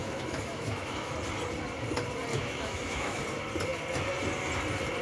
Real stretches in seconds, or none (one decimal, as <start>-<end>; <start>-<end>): 1.1-2.3; 3.2-5.0